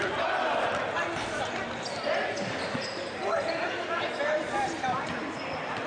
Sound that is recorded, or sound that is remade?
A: recorded